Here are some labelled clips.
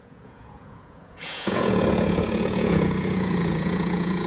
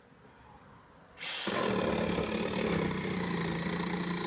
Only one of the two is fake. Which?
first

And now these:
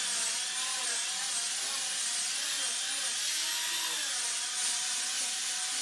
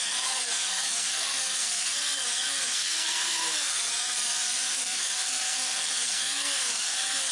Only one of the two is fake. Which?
second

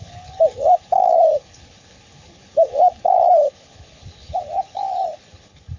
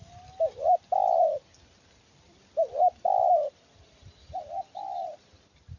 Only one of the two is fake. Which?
first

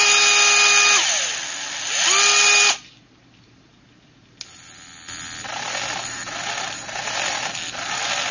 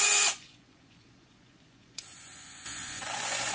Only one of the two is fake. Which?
second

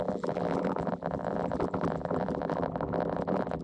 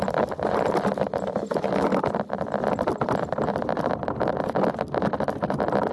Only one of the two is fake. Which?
first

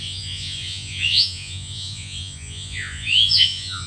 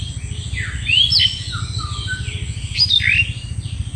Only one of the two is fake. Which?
first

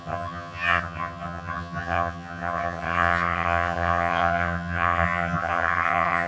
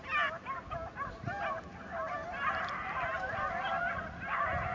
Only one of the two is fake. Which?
first